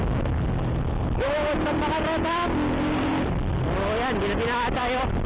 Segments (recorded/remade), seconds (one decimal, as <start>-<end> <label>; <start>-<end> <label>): 0.0-5.3 recorded